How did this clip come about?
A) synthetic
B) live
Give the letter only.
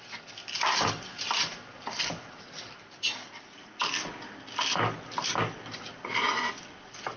B